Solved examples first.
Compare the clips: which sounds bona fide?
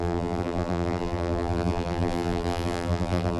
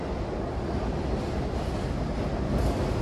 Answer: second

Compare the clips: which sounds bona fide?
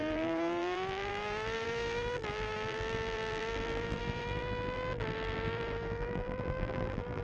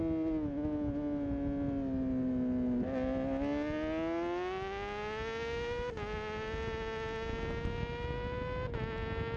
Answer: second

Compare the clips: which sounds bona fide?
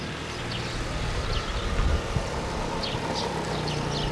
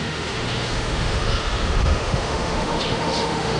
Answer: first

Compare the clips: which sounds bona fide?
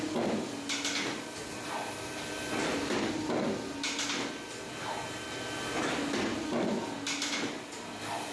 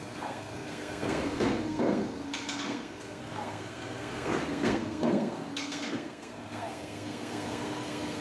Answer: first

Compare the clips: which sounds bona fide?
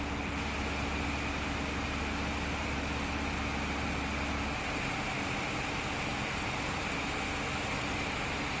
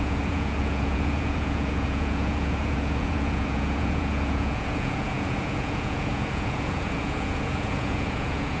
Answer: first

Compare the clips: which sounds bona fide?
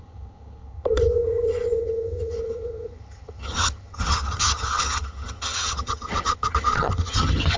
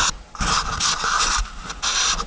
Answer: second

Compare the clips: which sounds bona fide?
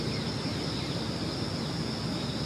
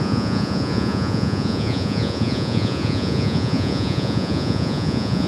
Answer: first